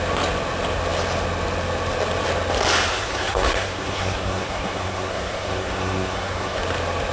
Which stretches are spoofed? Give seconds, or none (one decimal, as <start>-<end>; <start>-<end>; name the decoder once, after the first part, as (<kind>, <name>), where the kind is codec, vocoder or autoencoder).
2.9-6.6 (codec, SNAC)